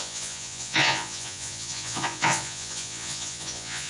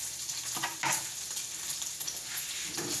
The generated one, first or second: first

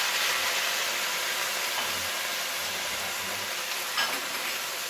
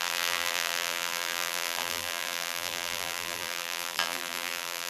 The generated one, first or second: second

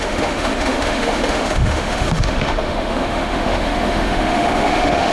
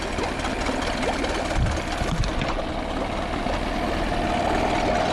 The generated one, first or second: first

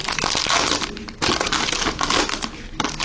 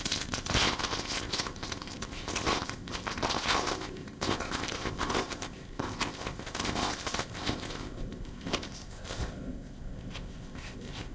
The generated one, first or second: second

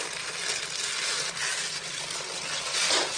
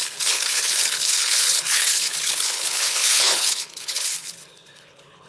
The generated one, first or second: second